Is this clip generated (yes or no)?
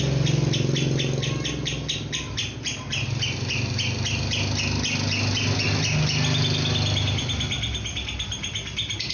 no